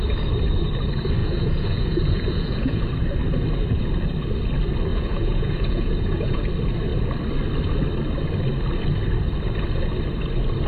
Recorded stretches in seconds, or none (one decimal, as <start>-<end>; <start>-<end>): 0.0-1.2; 2.8-4.9; 6.4-10.7